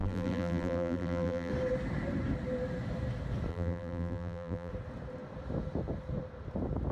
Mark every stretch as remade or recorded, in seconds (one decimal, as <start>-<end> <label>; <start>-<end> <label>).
0.0-1.5 remade; 1.5-3.5 recorded; 3.5-4.7 remade; 4.7-6.9 recorded